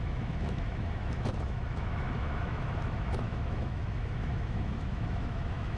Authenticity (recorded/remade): remade